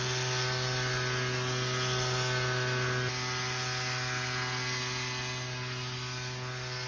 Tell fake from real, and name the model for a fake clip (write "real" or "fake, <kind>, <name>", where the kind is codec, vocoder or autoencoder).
real